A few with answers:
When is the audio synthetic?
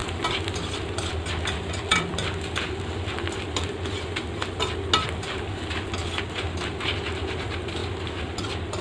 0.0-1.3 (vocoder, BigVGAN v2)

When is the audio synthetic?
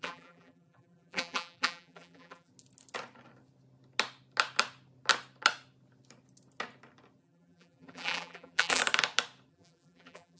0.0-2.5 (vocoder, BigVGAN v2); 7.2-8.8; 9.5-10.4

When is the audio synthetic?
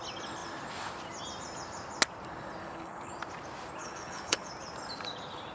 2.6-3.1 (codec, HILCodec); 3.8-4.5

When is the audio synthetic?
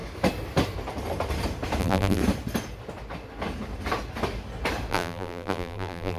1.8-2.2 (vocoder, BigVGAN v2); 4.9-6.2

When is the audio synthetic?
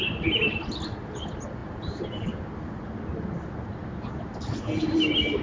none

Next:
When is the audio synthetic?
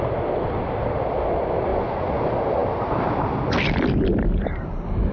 1.7-2.2 (vocoder, Vocos)